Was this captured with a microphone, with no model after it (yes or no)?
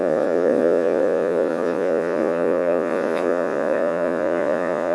no